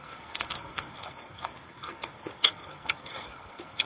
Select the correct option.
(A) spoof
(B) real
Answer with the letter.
A